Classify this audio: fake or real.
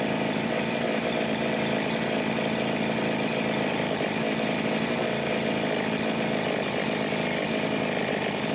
real